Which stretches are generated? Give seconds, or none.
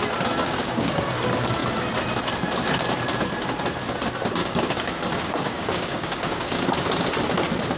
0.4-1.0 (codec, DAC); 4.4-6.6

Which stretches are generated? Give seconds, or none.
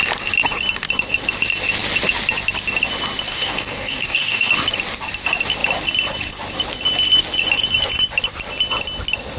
3.3-4.5 (codec, DAC)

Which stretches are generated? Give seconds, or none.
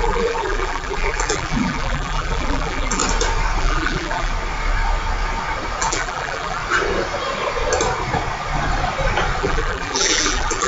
0.0-3.0 (vocoder, BigVGAN v2); 3.6-4.3; 5.8-6.6; 9.4-10.7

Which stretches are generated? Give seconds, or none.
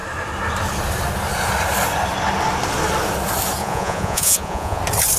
3.6-4.8 (vocoder, Vocos)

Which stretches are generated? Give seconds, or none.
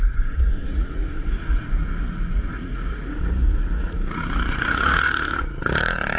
0.0-6.2 (vocoder, Vocos)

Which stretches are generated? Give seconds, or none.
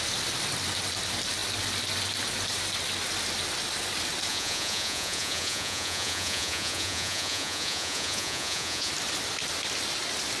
4.3-8.9 (vocoder, Vocos)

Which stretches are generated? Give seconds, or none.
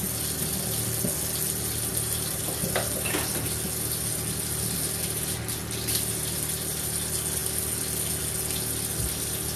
1.9-2.4 (vocoder, BigVGAN v2)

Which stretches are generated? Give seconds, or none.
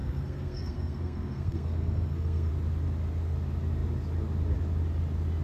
0.0-2.5 (codec, SNAC)